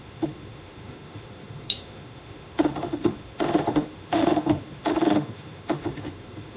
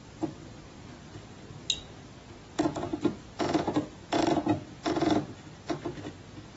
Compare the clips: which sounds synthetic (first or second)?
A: first